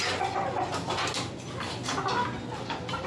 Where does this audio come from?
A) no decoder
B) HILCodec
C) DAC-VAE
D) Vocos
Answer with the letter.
A